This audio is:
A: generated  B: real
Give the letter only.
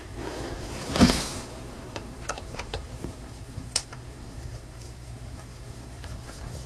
A